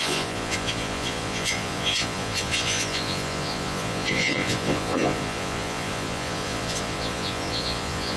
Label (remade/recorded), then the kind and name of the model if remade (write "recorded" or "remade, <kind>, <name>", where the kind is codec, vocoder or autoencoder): remade, vocoder, Vocos